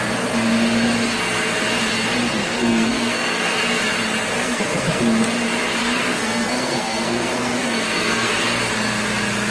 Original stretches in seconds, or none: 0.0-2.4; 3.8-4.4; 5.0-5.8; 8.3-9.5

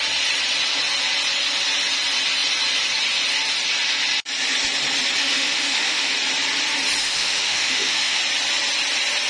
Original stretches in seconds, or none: 0.0-5.2; 6.1-7.0; 8.2-9.3

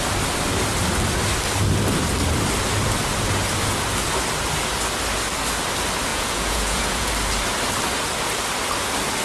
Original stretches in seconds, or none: 0.0-6.1; 7.1-9.2

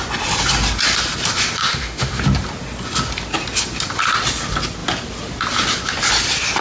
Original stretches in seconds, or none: 0.0-1.6; 2.2-6.6

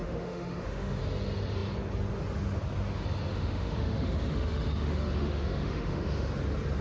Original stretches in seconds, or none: 1.0-3.3; 6.3-6.8

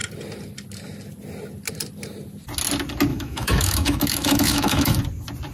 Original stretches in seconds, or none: 0.0-3.1; 5.0-5.5